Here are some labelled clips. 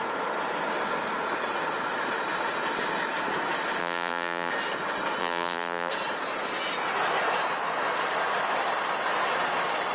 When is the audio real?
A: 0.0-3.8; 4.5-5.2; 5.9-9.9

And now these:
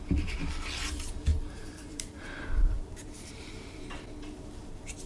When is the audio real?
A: 0.0-1.3; 3.8-5.1

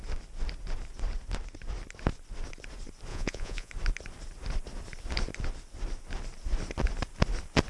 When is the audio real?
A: 0.0-3.1; 3.7-7.7

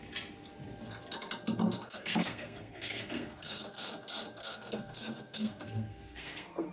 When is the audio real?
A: 0.0-1.6; 3.9-4.4

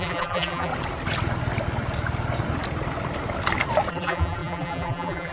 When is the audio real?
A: 0.7-3.9

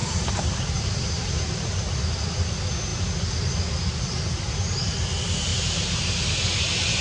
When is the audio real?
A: 1.8-5.5; 6.2-7.0

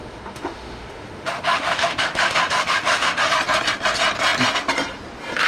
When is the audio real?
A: 3.3-5.5

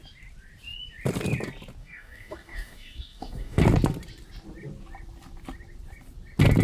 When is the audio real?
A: 0.0-1.8; 3.6-6.6